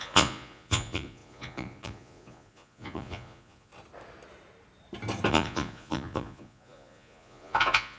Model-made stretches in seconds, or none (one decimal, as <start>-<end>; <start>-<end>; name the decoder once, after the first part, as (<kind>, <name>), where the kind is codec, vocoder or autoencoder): 0.0-3.7 (vocoder, Vocos); 5.3-8.0